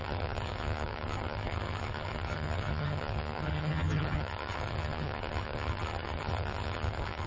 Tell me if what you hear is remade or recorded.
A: remade